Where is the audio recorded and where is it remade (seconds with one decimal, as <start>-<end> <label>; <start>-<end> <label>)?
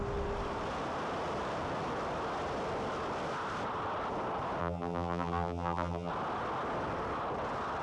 0.0-4.6 recorded; 4.6-6.1 remade; 6.1-7.8 recorded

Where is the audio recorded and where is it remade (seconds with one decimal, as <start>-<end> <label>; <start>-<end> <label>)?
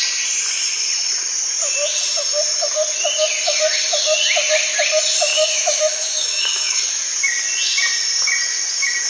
0.0-5.3 recorded; 5.3-6.8 remade; 6.8-9.1 recorded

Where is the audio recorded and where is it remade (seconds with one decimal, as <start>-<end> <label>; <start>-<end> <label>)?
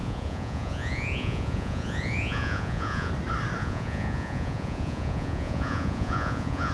0.0-3.1 remade; 3.1-3.6 recorded; 3.6-6.7 remade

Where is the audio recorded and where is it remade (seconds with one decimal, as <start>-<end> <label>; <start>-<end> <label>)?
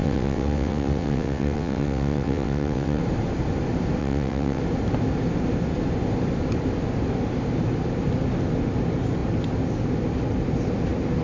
0.0-3.0 remade; 3.0-4.0 recorded; 4.0-4.6 remade; 4.6-11.2 recorded